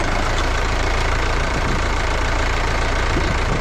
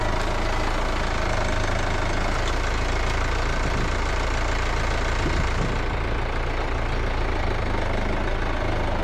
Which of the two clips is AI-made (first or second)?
first